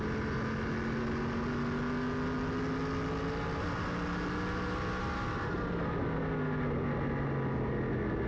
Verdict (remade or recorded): recorded